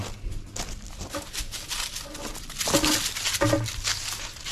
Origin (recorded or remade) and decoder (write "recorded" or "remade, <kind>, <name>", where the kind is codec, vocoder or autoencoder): recorded